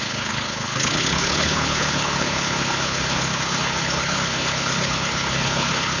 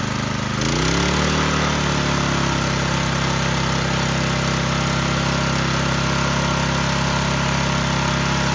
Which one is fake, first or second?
first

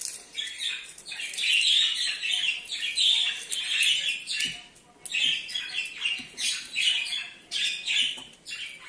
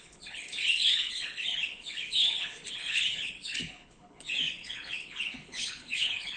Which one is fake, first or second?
second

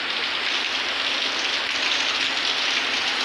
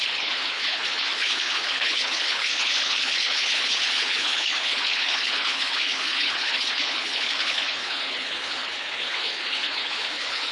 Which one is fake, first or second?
second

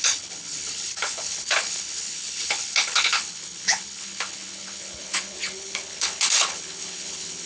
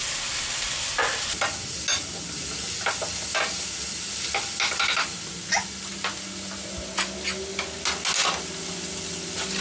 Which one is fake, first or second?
first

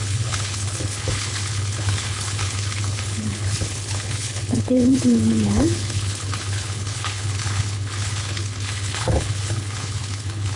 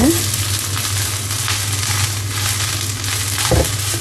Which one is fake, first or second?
first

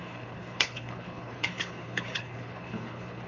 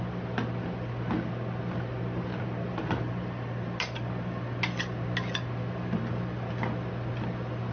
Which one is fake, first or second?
first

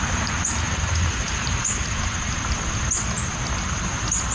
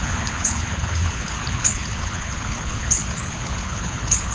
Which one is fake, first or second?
second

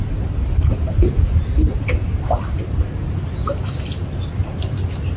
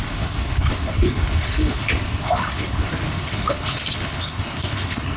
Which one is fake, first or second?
second